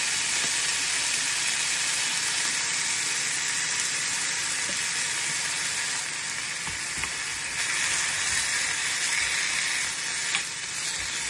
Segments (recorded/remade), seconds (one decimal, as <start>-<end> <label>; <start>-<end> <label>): 0.0-11.3 recorded